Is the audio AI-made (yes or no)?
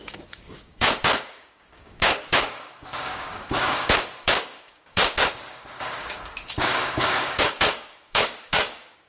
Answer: yes